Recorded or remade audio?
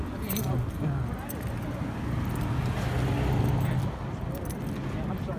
recorded